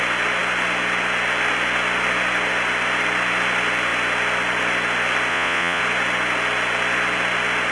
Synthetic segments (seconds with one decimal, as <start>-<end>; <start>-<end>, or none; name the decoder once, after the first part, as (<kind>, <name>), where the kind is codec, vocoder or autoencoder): 5.3-5.8 (vocoder, Vocos)